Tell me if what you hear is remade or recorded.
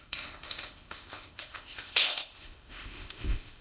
remade